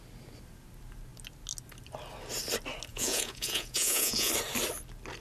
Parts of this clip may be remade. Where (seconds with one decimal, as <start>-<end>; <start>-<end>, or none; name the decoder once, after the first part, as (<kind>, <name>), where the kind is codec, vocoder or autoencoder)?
2.9-4.3 (vocoder, Vocos)